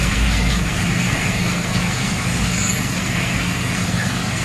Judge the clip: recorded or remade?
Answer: remade